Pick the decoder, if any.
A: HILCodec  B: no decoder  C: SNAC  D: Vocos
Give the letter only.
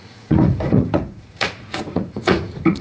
D